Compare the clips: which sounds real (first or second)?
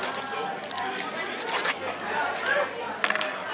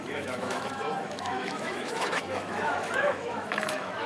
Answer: first